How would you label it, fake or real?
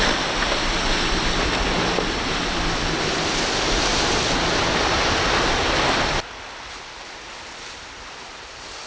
real